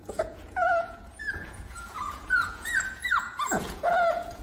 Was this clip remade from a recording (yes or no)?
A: yes